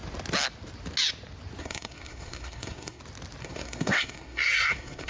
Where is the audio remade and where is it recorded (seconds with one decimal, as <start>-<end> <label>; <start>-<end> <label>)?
0.0-1.6 recorded; 1.6-3.0 remade; 3.0-3.4 recorded; 3.4-5.1 remade